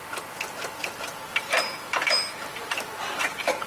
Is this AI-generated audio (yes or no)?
yes